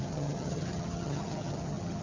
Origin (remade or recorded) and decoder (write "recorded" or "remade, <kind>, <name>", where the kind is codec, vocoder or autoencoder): remade, vocoder, HiFi-GAN